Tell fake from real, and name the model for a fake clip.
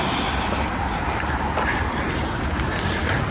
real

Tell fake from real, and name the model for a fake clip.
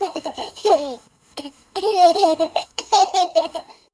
fake, codec, SNAC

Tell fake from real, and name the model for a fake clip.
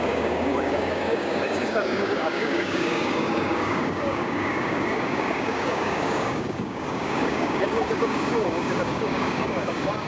fake, codec, DAC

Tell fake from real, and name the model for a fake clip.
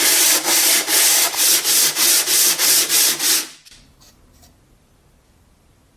real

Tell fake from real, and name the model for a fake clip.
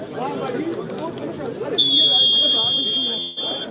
real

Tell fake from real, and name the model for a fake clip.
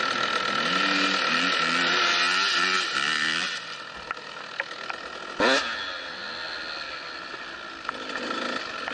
real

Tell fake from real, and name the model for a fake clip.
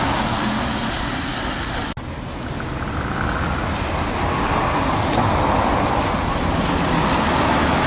real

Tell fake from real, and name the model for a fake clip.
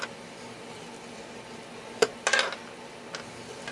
real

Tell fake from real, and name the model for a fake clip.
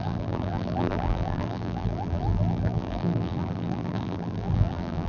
fake, vocoder, BigVGAN v2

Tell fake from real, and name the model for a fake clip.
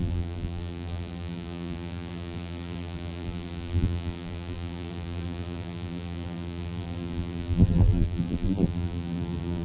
fake, vocoder, BigVGAN v2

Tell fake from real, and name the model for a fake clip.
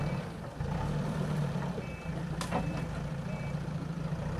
fake, vocoder, BigVGAN v2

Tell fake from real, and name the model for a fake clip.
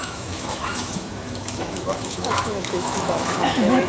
fake, autoencoder, DAC-VAE